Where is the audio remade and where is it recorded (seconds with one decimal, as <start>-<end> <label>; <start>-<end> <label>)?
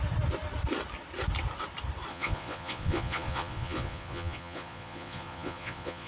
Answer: 0.0-2.1 recorded; 2.1-6.1 remade